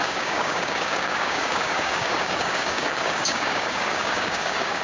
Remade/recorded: remade